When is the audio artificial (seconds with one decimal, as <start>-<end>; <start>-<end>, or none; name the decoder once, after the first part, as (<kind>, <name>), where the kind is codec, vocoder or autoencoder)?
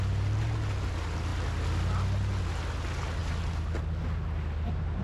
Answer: none